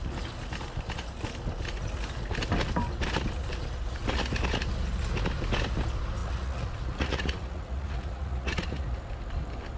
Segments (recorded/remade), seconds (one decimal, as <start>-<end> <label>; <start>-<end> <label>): 0.0-6.2 recorded; 6.2-9.0 remade; 9.0-9.8 recorded